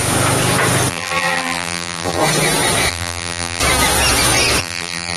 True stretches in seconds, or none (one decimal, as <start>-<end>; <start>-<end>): 0.0-0.9; 2.2-2.9; 3.6-4.6